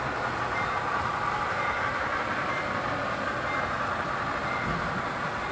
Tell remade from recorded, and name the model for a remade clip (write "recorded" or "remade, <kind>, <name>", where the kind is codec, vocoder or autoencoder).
recorded